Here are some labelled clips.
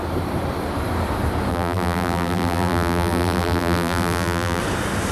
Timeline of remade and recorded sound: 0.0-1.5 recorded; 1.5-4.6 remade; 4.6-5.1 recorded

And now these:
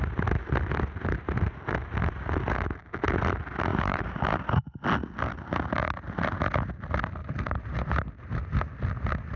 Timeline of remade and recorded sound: 0.0-3.7 recorded; 3.7-4.8 remade; 4.8-7.2 recorded; 7.2-8.4 remade; 8.4-9.4 recorded

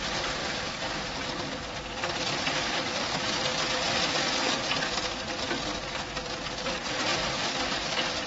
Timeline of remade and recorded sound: 0.0-0.4 recorded; 0.4-4.7 remade; 4.7-7.1 recorded; 7.1-8.3 remade

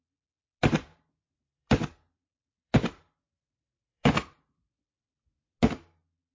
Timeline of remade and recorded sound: 0.0-0.9 recorded; 0.9-4.7 remade; 4.7-6.3 recorded